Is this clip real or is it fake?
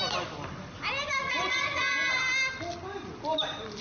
real